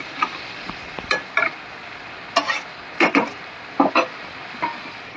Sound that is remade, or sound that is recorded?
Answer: recorded